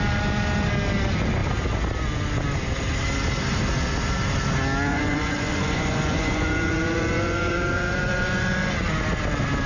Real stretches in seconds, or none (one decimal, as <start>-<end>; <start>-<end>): 0.0-4.9; 8.7-9.7